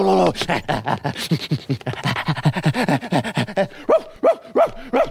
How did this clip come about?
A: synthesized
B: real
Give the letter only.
B